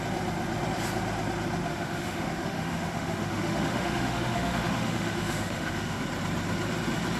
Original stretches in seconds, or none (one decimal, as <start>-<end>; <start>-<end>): 0.0-1.7; 6.0-7.2